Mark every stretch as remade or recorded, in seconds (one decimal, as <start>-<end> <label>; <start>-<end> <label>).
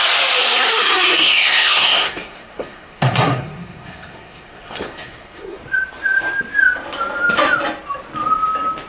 0.0-0.4 recorded; 0.4-5.6 remade; 5.6-8.9 recorded